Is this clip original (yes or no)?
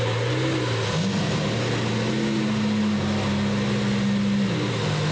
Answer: yes